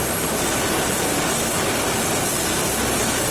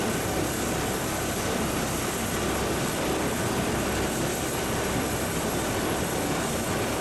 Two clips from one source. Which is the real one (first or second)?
first